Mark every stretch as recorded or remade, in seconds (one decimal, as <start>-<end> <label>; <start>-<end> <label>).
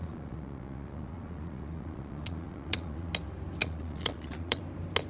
0.0-3.1 remade; 3.1-3.6 recorded; 3.6-4.6 remade; 4.6-5.1 recorded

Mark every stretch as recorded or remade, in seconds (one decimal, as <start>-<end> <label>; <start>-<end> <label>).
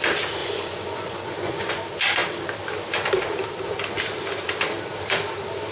0.0-0.4 recorded; 0.4-1.7 remade; 1.7-5.7 recorded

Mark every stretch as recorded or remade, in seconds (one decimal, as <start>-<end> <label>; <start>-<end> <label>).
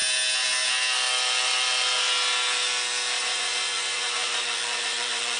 0.0-3.2 recorded; 3.2-5.4 remade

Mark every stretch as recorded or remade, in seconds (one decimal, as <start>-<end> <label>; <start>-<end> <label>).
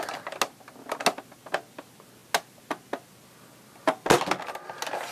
0.0-5.1 recorded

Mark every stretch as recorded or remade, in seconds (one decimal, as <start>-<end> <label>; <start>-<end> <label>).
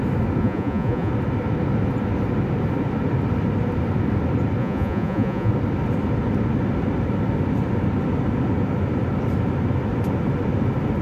0.0-0.4 recorded; 0.4-1.1 remade; 1.1-4.6 recorded; 4.6-5.5 remade; 5.5-11.0 recorded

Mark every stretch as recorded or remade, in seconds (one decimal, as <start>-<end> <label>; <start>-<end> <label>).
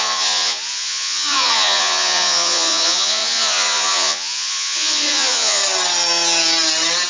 0.0-5.6 remade; 5.6-7.1 recorded